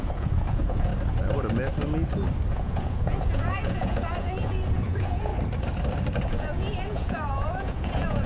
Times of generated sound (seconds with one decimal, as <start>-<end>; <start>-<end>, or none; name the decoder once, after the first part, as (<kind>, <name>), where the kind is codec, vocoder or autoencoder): 0.0-0.9 (vocoder, Vocos); 2.5-5.3; 6.3-8.3